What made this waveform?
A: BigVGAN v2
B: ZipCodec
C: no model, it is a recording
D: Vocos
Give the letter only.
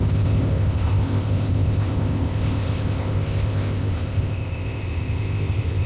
B